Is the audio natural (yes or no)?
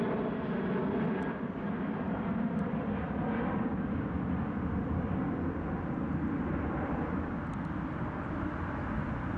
yes